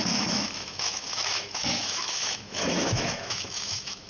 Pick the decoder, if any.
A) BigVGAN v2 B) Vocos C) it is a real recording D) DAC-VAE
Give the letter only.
D